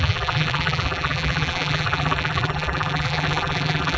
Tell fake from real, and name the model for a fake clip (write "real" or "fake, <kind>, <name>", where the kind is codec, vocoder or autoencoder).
fake, vocoder, BigVGAN v2